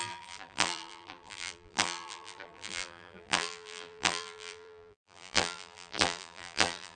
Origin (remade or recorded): remade